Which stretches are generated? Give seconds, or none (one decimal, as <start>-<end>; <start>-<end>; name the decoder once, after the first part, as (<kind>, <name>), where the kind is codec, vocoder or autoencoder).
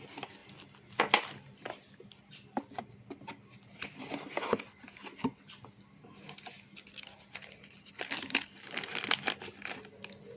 none